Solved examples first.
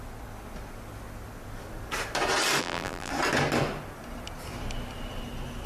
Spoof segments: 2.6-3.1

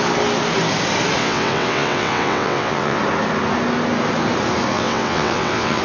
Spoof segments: 1.2-3.0; 4.7-5.8

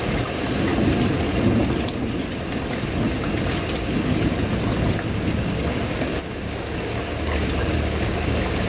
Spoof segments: 0.0-0.7; 5.1-8.7

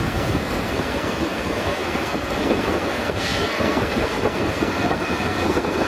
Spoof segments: 0.0-5.9

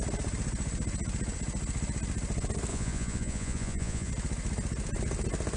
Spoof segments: 2.7-4.1

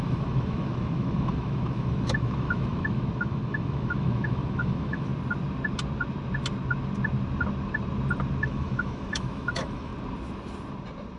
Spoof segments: 0.0-5.1; 8.4-9.9

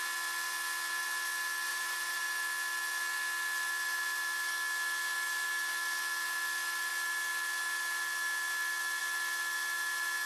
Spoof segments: 1.7-2.2